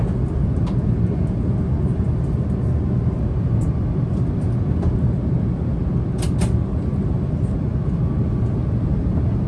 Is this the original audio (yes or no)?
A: yes